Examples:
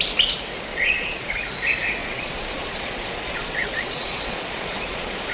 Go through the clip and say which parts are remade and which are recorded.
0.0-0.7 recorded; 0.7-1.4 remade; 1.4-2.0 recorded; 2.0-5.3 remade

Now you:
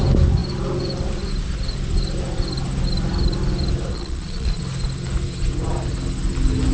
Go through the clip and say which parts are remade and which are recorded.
0.0-3.9 recorded; 3.9-4.6 remade; 4.6-6.7 recorded

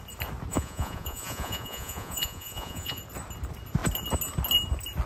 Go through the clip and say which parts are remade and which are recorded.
0.0-0.5 recorded; 0.5-3.0 remade; 3.0-5.1 recorded

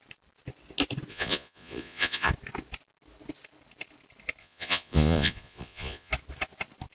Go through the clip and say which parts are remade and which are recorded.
0.0-1.1 recorded; 1.1-2.3 remade; 2.3-4.4 recorded; 4.4-6.1 remade; 6.1-6.9 recorded

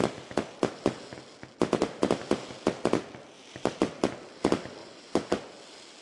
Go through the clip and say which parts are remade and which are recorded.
0.0-4.8 recorded; 4.8-5.5 remade; 5.5-6.0 recorded

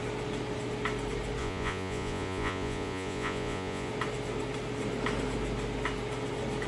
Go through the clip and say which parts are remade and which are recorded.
0.0-1.4 recorded; 1.4-3.9 remade; 3.9-6.7 recorded

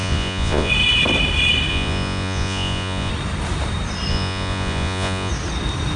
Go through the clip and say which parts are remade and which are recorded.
0.0-0.7 remade; 0.7-1.7 recorded; 1.7-3.1 remade; 3.1-4.1 recorded; 4.1-5.3 remade; 5.3-6.0 recorded

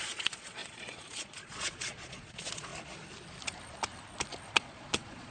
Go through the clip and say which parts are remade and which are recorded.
0.0-2.7 remade; 2.7-4.5 recorded; 4.5-5.3 remade